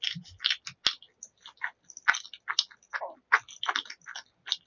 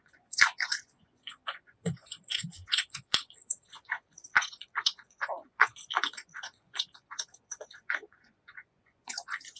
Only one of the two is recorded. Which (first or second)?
first